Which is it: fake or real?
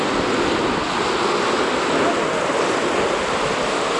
real